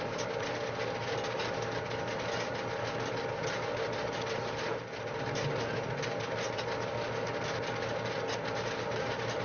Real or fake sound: real